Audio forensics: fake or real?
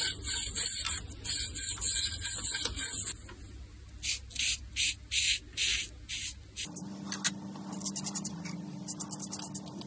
real